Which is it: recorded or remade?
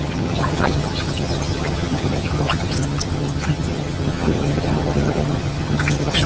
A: remade